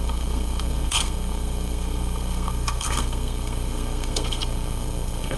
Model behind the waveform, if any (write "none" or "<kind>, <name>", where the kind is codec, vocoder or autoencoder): codec, SNAC